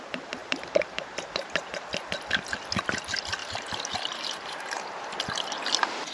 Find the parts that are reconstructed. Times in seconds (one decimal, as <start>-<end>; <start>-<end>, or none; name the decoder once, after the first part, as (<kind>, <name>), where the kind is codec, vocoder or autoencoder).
0.4-1.7 (vocoder, BigVGAN v2); 3.4-5.1